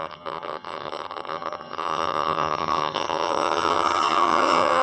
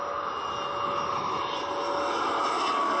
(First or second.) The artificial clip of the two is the first